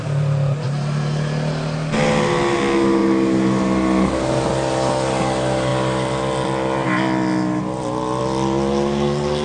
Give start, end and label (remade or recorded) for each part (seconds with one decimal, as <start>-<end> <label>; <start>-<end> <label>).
0.0-9.4 recorded